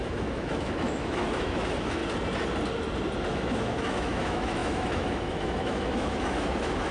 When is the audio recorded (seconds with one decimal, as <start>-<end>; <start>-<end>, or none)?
2.0-3.3